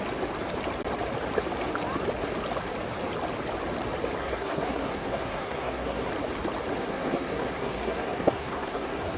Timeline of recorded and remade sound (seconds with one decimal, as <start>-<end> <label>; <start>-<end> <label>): 0.0-4.2 recorded; 4.2-6.1 remade; 6.1-6.8 recorded; 6.8-9.2 remade